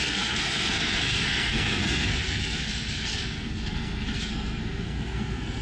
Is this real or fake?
fake